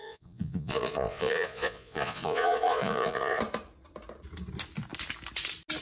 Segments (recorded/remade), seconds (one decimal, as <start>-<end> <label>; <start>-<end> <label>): 0.0-3.4 remade; 3.4-5.8 recorded